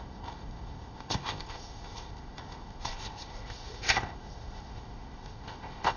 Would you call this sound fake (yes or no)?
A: yes